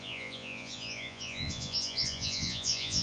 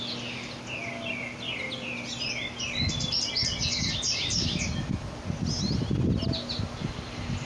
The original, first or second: second